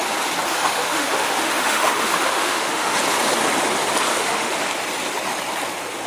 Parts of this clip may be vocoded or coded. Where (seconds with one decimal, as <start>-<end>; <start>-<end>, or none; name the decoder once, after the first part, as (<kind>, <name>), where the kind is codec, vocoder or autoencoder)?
0.5-2.9 (autoencoder, DAC-VAE); 4.1-4.6